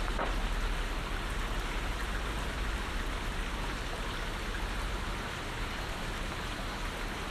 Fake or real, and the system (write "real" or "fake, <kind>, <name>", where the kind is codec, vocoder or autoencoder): real